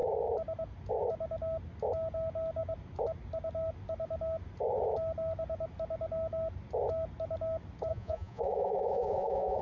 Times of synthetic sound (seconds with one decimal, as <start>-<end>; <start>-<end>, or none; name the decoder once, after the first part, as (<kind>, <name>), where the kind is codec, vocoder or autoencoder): 7.9-9.6 (vocoder, Vocos)